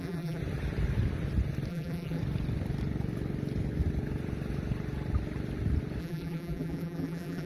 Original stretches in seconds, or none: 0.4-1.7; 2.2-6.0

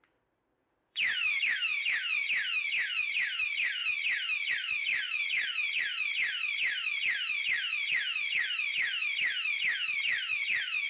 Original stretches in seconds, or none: 2.2-3.0; 3.8-4.5; 5.2-5.8

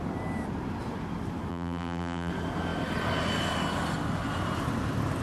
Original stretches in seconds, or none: 0.0-1.5; 2.3-5.2

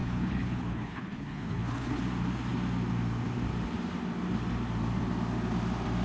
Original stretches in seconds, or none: 2.0-6.0

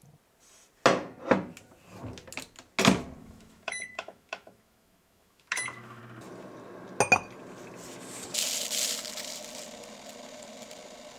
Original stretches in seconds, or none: 0.0-3.2; 6.0-11.2

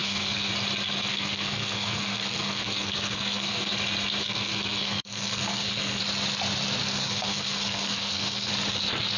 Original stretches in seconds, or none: 0.5-1.1; 3.7-4.2; 6.0-6.8; 8.5-9.2

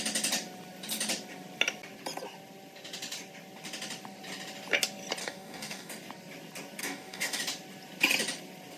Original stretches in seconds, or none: 0.0-5.2; 5.9-6.8; 7.4-8.8